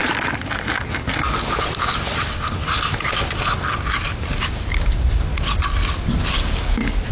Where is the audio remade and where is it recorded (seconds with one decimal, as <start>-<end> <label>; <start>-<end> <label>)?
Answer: 0.0-4.3 recorded; 4.3-5.3 remade; 5.3-6.3 recorded; 6.3-7.1 remade